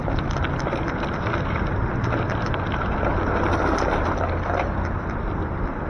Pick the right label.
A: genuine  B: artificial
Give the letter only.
A